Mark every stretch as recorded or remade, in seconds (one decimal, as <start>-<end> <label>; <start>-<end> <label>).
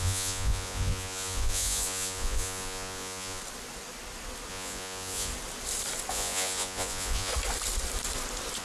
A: 0.0-3.4 remade; 3.4-4.5 recorded; 4.5-5.3 remade; 5.3-6.1 recorded; 6.1-7.3 remade; 7.3-8.6 recorded